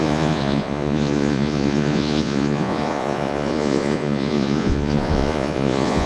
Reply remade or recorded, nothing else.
remade